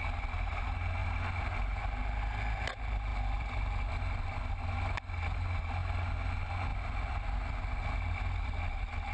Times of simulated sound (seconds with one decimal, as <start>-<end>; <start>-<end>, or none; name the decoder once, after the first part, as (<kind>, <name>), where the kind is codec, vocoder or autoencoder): 3.1-3.9 (vocoder, BigVGAN v2)